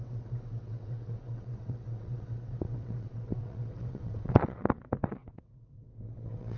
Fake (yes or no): yes